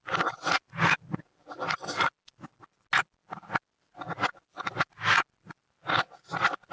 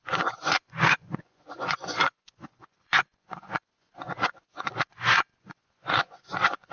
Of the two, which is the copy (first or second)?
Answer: second